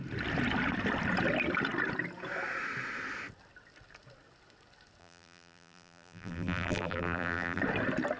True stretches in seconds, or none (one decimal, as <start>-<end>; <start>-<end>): 0.0-5.0; 7.6-8.2